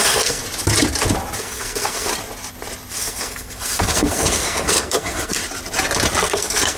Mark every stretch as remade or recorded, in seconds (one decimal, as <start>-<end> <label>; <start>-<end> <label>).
0.0-0.4 remade; 0.4-1.4 recorded; 1.4-2.1 remade; 2.1-2.9 recorded; 2.9-5.4 remade; 5.4-6.2 recorded; 6.2-6.8 remade